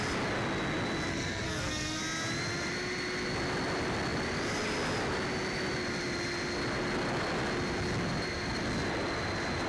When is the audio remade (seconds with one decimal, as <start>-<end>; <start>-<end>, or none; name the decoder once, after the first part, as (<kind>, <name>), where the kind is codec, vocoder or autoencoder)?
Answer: 1.1-2.0 (codec, SNAC)